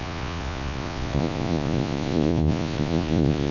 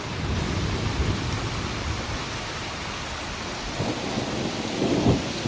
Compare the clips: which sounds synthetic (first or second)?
first